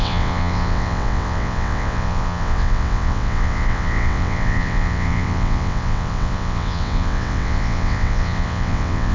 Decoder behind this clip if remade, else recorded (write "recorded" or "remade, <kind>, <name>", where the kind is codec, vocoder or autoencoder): remade, vocoder, WaveNeXt